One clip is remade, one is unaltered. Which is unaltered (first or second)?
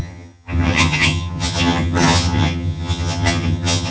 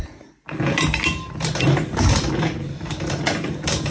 second